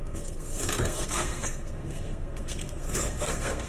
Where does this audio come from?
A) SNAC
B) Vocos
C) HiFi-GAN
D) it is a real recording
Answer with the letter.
A